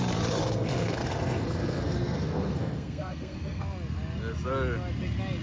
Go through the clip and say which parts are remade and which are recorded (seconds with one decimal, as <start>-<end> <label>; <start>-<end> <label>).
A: 0.0-0.4 recorded; 0.4-3.6 remade; 3.6-5.4 recorded